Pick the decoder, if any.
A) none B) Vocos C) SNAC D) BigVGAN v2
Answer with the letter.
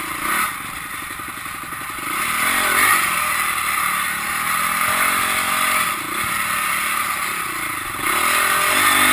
A